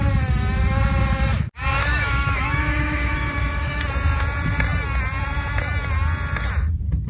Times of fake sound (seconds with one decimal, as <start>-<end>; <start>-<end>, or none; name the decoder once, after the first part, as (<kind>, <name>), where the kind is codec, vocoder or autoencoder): 1.8-3.8 (autoencoder, DAC-VAE)